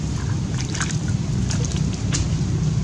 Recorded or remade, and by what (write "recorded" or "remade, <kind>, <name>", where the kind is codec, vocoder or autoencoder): recorded